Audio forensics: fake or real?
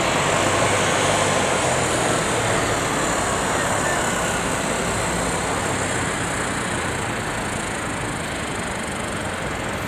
real